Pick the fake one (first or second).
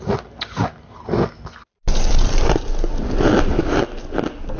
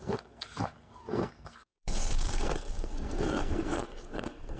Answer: second